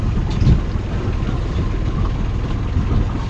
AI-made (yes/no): no